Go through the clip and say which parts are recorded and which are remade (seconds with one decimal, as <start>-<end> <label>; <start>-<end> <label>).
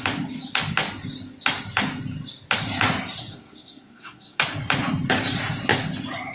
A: 0.0-3.2 recorded; 3.2-4.4 remade; 4.4-6.3 recorded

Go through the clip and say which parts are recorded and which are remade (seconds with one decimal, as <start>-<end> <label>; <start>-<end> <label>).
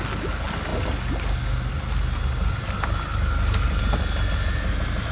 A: 0.0-5.1 recorded